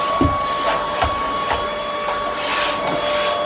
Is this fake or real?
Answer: real